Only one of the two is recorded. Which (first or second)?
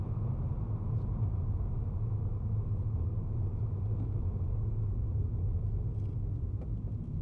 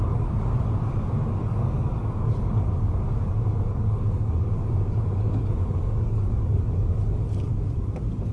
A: first